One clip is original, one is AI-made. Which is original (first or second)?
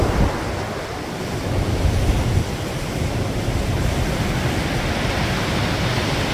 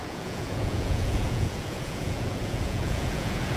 first